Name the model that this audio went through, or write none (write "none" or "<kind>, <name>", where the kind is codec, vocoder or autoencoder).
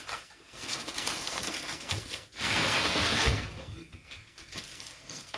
codec, SNAC